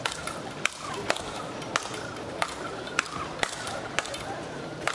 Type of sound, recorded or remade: recorded